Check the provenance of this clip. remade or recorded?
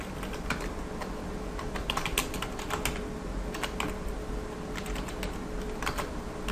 recorded